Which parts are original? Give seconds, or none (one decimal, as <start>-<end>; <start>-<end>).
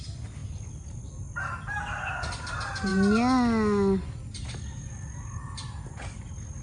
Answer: 0.0-6.6